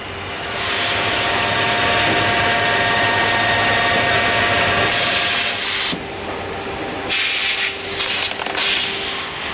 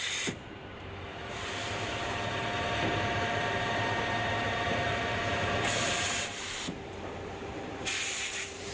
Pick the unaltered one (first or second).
first